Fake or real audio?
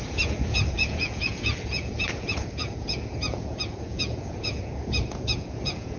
fake